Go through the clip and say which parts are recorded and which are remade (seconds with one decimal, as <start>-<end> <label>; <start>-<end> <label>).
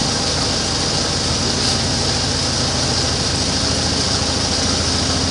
0.0-5.3 recorded